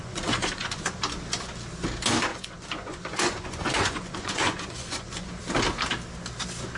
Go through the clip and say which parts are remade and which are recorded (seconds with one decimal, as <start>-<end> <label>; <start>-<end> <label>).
0.0-1.0 remade; 1.0-2.3 recorded; 2.3-5.4 remade; 5.4-6.8 recorded